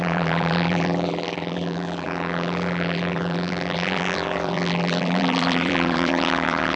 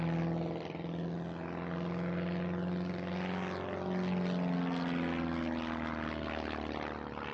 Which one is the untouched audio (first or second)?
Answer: second